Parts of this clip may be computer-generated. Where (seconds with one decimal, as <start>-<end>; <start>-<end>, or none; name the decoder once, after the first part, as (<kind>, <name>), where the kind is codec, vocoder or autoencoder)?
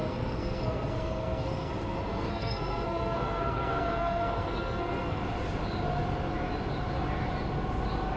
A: 0.0-1.7 (codec, SNAC); 2.1-5.2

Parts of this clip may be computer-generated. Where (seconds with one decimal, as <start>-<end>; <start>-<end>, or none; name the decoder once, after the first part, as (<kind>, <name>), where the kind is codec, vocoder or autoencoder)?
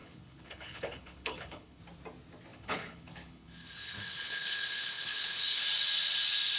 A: 0.0-1.8 (codec, HILCodec); 2.5-5.6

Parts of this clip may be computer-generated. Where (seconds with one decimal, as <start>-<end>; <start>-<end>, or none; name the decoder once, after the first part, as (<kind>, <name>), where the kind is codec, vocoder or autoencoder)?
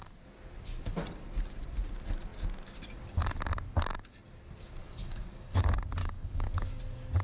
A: 4.8-5.6 (codec, DAC); 6.0-6.8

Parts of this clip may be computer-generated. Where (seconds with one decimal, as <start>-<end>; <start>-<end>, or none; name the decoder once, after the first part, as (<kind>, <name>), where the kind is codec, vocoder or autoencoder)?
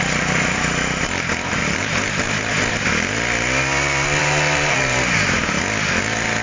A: 1.6-2.9 (vocoder, BigVGAN v2); 4.2-5.6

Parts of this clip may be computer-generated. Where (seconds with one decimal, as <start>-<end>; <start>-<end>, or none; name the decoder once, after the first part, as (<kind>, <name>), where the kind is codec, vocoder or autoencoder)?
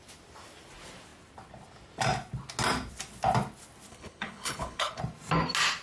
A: 3.9-5.0 (codec, HILCodec)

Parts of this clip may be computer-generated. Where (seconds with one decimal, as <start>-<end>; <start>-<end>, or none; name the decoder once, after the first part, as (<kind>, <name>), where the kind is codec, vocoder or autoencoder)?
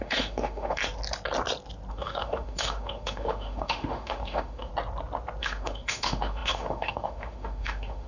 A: 0.0-0.8 (autoencoder, DAC-VAE); 1.9-4.7; 5.4-8.1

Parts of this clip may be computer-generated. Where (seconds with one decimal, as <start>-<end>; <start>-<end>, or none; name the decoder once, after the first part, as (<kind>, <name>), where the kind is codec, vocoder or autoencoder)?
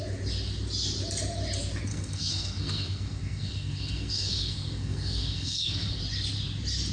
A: 1.9-6.0 (codec, SNAC)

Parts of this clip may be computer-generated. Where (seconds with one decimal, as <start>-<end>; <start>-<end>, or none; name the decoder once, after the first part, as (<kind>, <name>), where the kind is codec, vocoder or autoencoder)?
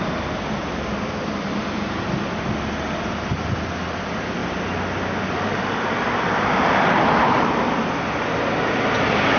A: none